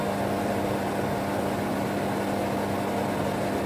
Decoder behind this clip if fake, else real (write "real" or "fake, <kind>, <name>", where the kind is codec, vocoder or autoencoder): real